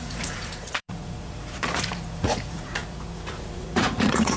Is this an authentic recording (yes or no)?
no